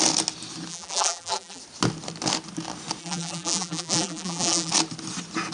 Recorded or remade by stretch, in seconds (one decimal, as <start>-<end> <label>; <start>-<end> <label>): 0.0-0.7 recorded; 0.7-1.6 remade; 1.6-3.0 recorded; 3.0-4.7 remade; 4.7-5.5 recorded